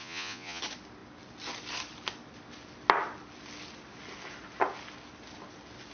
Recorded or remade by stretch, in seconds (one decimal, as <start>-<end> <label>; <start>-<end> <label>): 0.0-0.6 remade; 0.6-5.9 recorded